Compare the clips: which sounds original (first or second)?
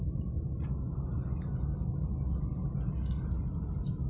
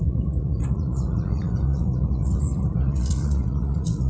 first